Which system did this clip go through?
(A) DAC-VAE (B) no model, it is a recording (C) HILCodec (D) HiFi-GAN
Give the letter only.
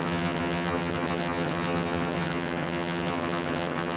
D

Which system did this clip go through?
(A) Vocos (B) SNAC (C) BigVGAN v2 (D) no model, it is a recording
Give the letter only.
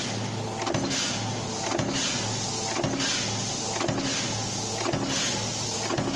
D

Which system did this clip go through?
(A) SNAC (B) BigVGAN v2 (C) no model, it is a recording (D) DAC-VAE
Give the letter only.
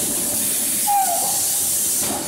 C